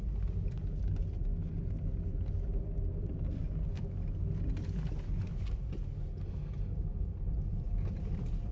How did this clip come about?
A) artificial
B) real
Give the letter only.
B